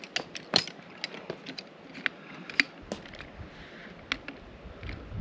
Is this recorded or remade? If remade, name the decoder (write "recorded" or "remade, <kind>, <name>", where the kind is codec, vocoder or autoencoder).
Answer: recorded